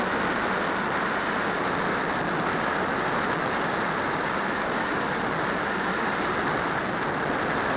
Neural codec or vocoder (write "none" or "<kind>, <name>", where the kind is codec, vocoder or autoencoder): none